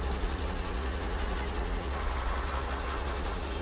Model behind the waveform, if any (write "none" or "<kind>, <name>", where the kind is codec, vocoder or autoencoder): vocoder, Vocos